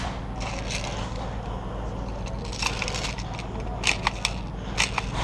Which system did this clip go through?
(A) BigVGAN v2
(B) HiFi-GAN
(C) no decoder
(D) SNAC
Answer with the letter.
C